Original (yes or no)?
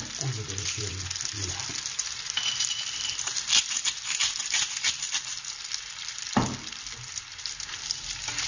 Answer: no